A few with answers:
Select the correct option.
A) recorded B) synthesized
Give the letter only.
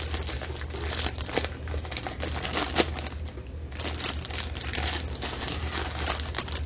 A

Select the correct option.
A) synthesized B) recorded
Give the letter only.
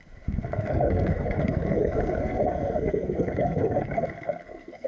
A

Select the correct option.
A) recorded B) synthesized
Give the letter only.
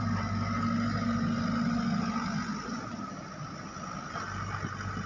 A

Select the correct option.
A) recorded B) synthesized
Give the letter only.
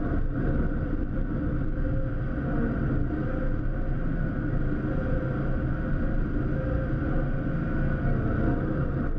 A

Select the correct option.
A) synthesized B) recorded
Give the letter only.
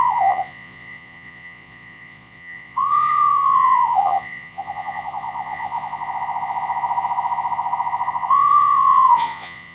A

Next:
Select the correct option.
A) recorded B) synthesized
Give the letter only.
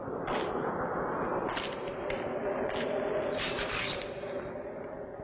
A